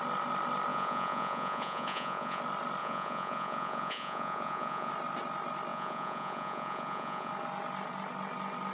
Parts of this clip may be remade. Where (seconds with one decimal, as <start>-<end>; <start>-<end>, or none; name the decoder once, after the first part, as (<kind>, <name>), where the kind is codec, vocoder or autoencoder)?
0.7-2.4 (vocoder, Vocos); 2.8-4.9; 5.7-7.3